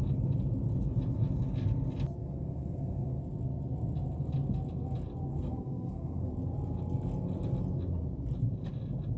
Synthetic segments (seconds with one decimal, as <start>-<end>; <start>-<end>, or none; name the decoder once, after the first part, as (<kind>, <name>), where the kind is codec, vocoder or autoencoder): 2.2-3.2 (codec, SNAC); 5.3-6.3